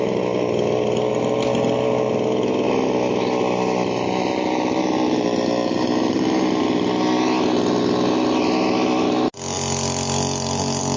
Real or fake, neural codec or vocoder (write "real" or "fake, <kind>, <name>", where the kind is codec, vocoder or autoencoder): real